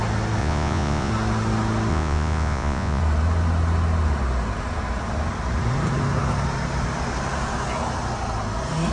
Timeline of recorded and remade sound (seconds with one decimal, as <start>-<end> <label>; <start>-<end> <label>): 0.0-0.4 recorded; 0.4-1.1 remade; 1.1-1.9 recorded; 1.9-3.0 remade; 3.0-8.9 recorded